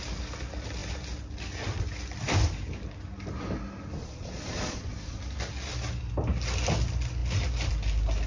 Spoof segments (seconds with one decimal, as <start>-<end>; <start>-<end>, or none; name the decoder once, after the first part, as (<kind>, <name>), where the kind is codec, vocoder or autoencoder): 4.0-5.2 (vocoder, Vocos)